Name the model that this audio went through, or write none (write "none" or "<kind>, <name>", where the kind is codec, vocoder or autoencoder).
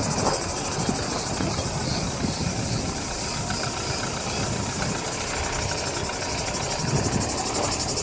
none